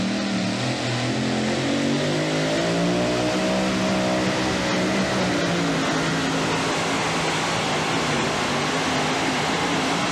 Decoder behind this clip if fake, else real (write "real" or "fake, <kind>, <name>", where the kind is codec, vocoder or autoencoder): real